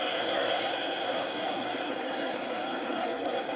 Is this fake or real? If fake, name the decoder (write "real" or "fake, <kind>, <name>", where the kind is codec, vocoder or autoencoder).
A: fake, codec, SNAC